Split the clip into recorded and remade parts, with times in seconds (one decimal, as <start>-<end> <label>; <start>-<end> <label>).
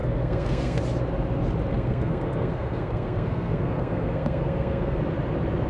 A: 0.0-0.8 remade; 0.8-1.7 recorded; 1.7-5.0 remade; 5.0-5.7 recorded